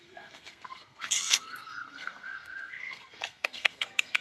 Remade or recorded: remade